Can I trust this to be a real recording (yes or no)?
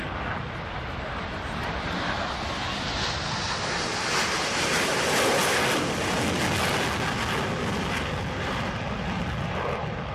yes